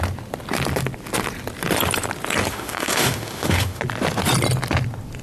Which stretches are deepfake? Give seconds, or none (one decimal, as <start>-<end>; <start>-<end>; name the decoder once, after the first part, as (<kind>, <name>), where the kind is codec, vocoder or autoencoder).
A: 2.5-3.8 (autoencoder, DAC-VAE)